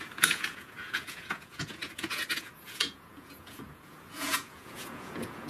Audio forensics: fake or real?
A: fake